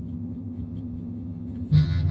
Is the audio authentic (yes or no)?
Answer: no